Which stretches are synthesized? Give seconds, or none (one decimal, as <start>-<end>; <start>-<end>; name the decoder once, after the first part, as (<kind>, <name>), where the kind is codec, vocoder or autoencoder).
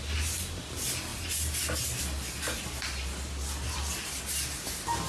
none